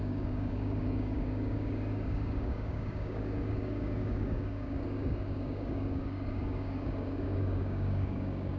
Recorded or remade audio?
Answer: remade